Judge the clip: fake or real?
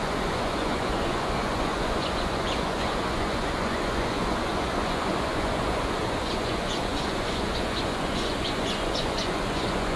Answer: fake